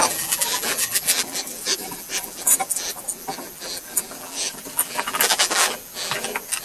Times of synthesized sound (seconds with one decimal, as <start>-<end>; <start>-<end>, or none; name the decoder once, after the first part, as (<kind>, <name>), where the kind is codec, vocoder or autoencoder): 0.0-6.6 (vocoder, BigVGAN v2)